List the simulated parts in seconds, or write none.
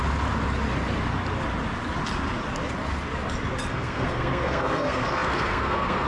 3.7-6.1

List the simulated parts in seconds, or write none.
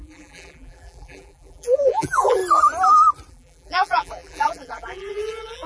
0.0-2.4; 3.3-5.7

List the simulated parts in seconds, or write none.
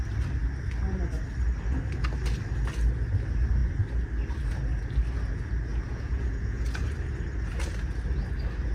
5.7-6.8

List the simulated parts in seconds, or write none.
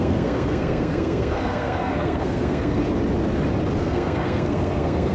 0.0-2.8; 3.8-5.1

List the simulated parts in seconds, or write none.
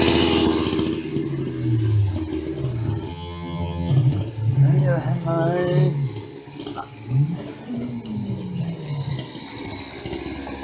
3.1-3.9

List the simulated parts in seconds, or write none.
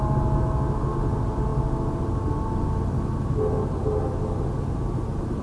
none